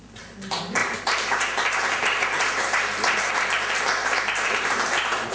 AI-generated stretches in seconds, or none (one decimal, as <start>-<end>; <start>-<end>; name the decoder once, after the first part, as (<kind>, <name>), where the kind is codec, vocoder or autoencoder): 0.8-3.3 (vocoder, BigVGAN v2); 4.0-5.3